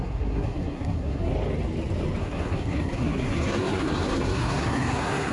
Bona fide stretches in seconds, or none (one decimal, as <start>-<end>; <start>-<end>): 1.3-2.2